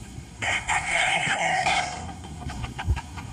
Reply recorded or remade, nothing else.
remade